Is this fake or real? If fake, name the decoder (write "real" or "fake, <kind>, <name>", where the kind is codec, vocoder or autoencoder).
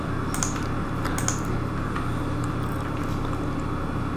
real